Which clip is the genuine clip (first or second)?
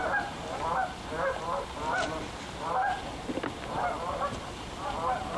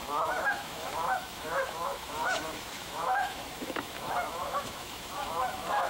first